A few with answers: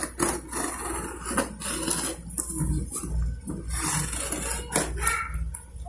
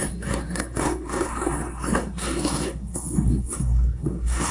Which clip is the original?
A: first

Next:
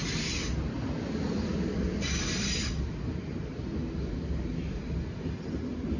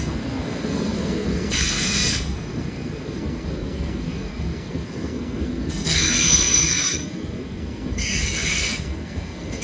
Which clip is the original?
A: first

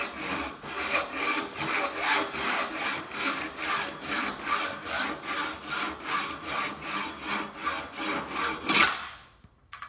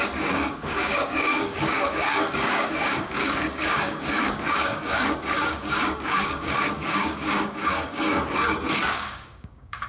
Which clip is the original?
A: first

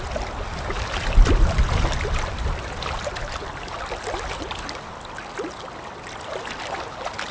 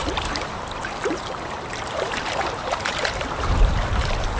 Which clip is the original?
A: first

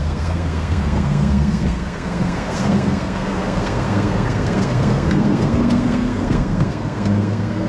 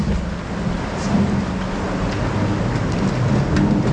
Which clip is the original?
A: second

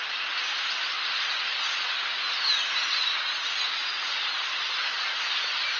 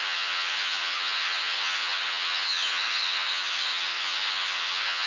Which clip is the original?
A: first